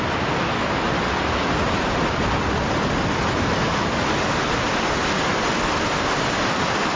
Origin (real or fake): real